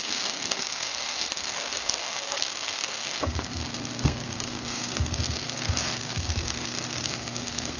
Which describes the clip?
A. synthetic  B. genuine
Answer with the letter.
A